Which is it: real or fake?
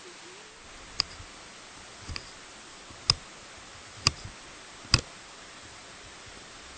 real